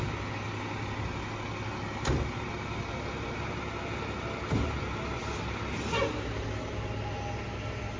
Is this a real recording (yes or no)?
yes